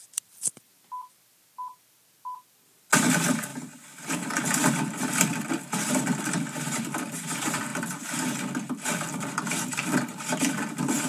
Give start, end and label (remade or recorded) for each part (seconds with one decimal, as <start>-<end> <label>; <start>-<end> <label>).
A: 0.0-0.7 remade; 0.7-3.0 recorded; 3.0-7.7 remade; 7.7-9.0 recorded; 9.0-11.1 remade